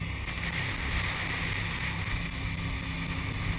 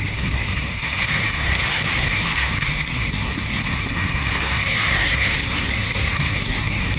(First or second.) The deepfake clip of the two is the second